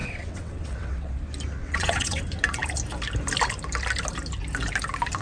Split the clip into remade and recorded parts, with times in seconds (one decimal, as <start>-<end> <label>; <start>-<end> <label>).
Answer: 0.0-1.1 remade; 1.1-1.6 recorded; 1.6-2.2 remade; 2.2-5.2 recorded

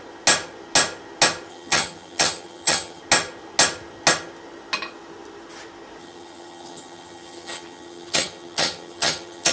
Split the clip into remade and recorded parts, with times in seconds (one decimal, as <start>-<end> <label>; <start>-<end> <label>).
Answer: 0.0-1.5 recorded; 1.5-3.0 remade; 3.0-6.0 recorded; 6.0-9.5 remade

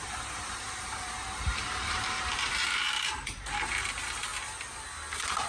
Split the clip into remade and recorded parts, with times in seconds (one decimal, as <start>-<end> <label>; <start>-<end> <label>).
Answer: 0.0-4.3 remade; 4.3-5.5 recorded

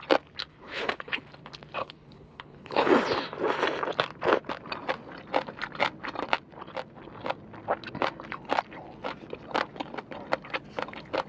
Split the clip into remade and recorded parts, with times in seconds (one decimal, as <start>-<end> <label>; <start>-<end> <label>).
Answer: 0.0-0.5 recorded; 0.5-1.2 remade; 1.2-1.8 recorded; 1.8-2.9 remade; 2.9-11.3 recorded

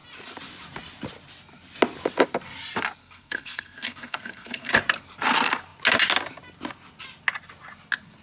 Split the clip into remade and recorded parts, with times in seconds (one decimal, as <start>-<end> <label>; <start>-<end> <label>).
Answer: 0.0-3.0 recorded; 3.0-4.7 remade; 4.7-8.2 recorded